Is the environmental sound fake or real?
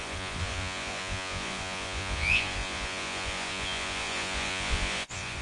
fake